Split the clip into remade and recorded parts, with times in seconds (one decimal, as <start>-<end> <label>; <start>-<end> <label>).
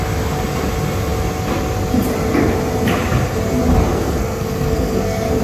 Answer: 0.0-3.9 recorded; 3.9-5.4 remade